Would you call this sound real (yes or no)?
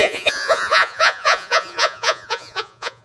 no